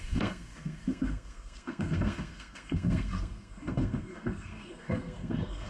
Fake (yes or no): yes